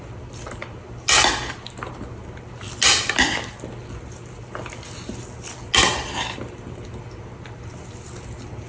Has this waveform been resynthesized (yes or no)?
no